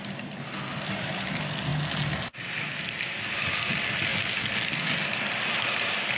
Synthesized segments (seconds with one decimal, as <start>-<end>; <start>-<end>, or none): none